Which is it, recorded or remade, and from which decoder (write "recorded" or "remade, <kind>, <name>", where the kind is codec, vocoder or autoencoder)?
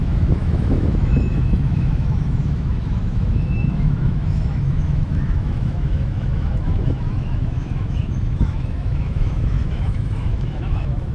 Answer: remade, autoencoder, DAC-VAE